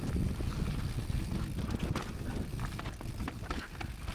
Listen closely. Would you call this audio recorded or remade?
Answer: recorded